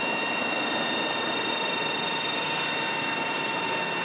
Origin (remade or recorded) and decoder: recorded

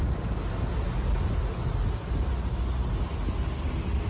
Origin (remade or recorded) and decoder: recorded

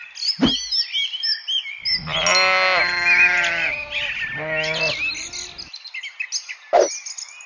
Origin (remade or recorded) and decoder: recorded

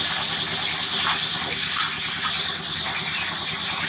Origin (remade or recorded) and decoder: recorded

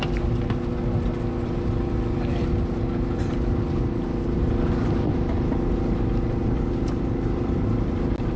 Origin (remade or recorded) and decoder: recorded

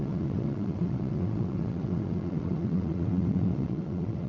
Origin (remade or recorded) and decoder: remade, vocoder, WaveNeXt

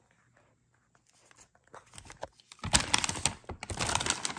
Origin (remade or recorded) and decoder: recorded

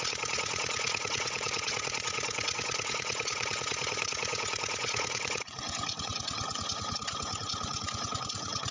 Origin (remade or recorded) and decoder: remade, vocoder, WaveNeXt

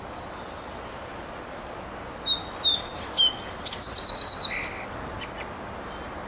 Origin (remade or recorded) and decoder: recorded